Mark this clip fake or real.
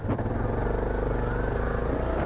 real